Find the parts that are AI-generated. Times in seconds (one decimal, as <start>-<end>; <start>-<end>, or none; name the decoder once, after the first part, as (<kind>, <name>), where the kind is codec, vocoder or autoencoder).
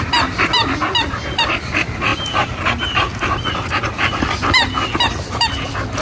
none